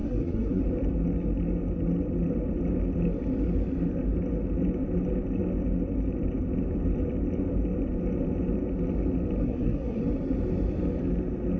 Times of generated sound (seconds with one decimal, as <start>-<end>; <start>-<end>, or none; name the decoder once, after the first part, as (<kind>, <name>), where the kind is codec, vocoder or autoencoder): 0.0-0.6 (codec, SNAC); 9.4-10.0